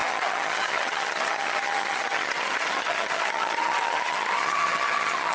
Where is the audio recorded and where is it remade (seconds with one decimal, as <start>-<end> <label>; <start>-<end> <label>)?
0.0-5.3 remade